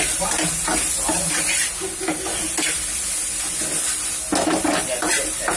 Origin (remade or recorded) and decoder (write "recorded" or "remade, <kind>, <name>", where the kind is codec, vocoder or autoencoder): recorded